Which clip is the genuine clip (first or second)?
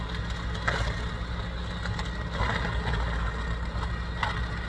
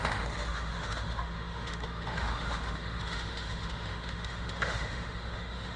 first